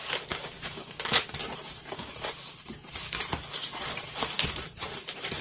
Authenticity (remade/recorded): remade